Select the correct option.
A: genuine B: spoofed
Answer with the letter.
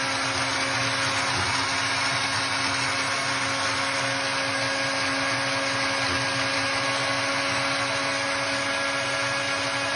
A